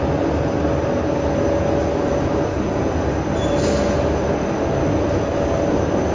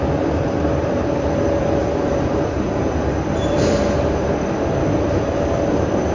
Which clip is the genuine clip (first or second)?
first